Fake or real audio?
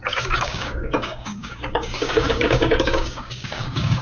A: fake